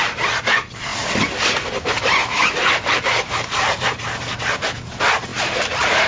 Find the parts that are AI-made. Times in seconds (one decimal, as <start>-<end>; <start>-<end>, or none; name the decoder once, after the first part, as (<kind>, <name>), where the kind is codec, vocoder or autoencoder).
2.4-4.0 (vocoder, BigVGAN v2); 5.3-6.1